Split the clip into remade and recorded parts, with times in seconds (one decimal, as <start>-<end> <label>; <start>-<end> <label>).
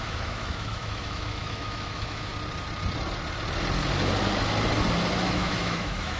0.0-2.3 remade; 2.3-5.2 recorded; 5.2-6.2 remade